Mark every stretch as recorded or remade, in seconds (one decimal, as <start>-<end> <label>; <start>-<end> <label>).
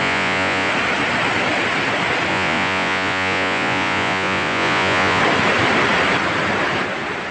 0.0-0.7 remade; 0.7-2.3 recorded; 2.3-5.2 remade; 5.2-7.3 recorded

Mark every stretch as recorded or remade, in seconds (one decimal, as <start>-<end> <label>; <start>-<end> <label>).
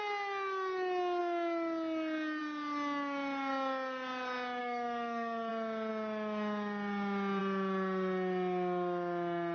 0.0-4.6 recorded; 4.6-5.5 remade; 5.5-9.5 recorded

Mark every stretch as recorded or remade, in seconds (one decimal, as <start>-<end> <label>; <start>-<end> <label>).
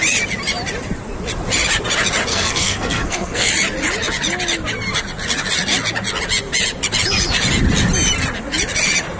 0.0-2.3 recorded; 2.3-3.5 remade; 3.5-9.2 recorded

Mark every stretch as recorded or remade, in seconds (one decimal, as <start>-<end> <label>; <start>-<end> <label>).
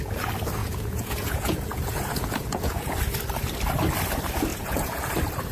0.0-0.6 recorded; 0.6-3.0 remade; 3.0-4.5 recorded; 4.5-5.1 remade; 5.1-5.5 recorded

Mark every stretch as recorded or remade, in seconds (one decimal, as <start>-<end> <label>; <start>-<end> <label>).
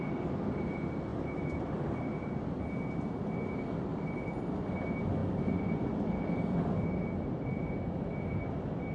0.0-1.1 recorded; 1.1-2.5 remade; 2.5-8.9 recorded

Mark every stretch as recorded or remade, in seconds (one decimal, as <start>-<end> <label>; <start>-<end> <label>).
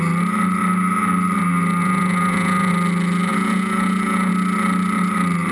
0.0-1.8 recorded; 1.8-2.7 remade; 2.7-3.3 recorded; 3.3-4.3 remade; 4.3-5.5 recorded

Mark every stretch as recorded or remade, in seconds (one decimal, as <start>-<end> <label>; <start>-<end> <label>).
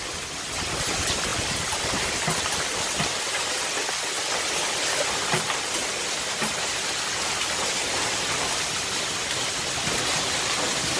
0.0-11.0 recorded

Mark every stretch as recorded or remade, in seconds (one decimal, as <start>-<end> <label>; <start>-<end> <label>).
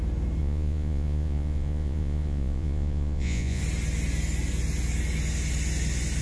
0.0-0.4 recorded; 0.4-3.6 remade; 3.6-6.2 recorded